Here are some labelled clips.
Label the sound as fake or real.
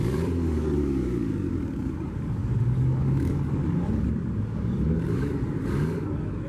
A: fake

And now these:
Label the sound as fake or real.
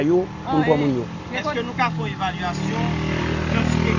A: real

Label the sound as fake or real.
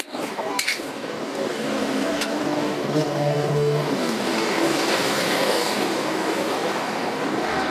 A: fake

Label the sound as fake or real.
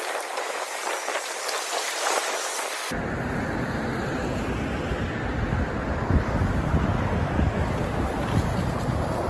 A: real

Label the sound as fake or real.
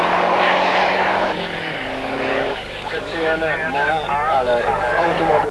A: fake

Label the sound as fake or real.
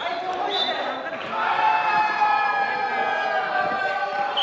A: real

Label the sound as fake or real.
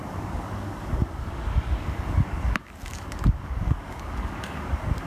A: fake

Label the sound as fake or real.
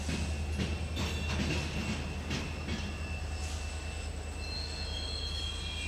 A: real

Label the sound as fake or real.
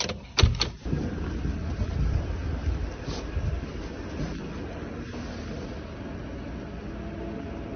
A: real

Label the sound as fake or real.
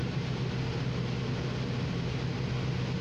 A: real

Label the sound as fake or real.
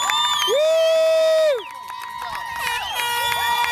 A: real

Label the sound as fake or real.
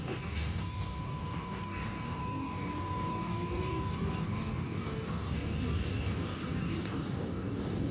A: fake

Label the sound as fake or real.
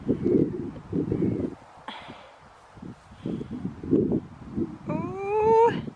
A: real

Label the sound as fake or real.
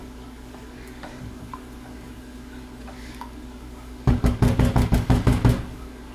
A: fake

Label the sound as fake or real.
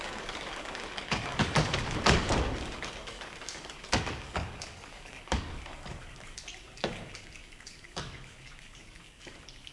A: fake